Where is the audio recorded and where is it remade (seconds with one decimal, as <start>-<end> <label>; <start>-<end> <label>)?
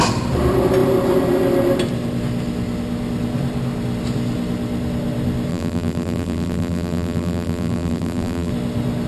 0.0-5.5 recorded; 5.5-8.5 remade; 8.5-9.1 recorded